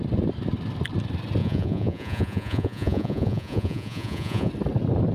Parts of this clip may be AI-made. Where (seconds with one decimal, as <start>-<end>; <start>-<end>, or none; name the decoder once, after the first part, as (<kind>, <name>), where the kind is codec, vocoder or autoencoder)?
1.4-4.5 (vocoder, Vocos)